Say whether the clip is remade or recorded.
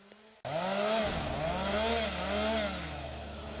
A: recorded